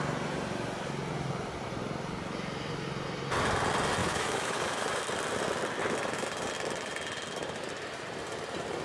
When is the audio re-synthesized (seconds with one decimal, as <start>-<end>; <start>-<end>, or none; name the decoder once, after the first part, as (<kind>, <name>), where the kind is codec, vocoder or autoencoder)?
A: 4.0-5.0 (autoencoder, DAC-VAE)